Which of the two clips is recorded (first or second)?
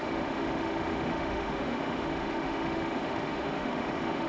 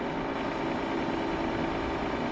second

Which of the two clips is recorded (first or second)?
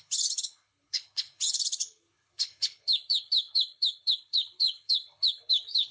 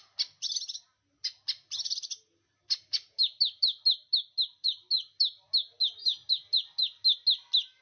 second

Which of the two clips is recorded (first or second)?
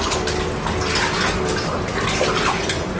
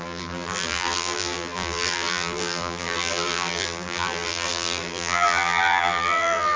first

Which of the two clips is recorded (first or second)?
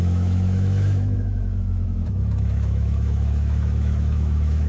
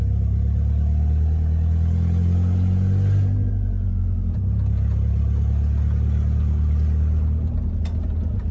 second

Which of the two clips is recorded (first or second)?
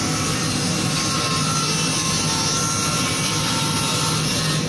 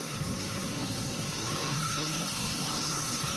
first